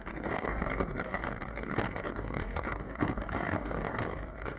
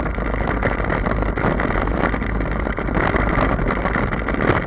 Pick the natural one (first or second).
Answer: second